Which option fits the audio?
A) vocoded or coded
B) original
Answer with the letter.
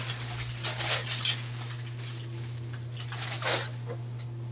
B